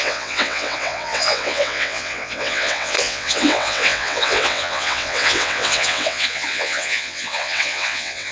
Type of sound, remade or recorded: remade